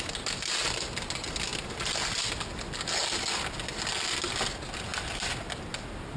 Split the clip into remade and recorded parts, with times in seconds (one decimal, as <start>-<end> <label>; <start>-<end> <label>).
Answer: 0.0-6.2 recorded